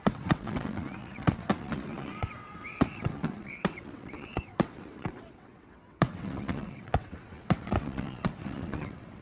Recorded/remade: remade